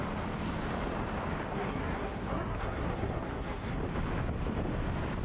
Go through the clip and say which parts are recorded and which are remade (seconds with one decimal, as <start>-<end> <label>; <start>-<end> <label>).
0.0-1.5 recorded; 1.5-3.8 remade; 3.8-5.2 recorded